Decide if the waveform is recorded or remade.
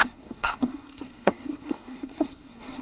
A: remade